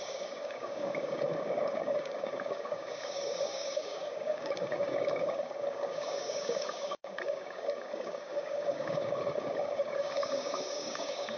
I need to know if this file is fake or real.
fake